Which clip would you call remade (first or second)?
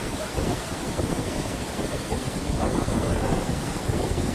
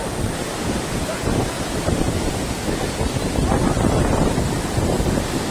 first